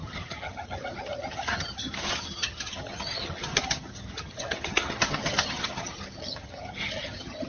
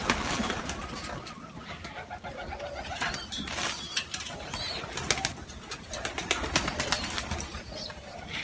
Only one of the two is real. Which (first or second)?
second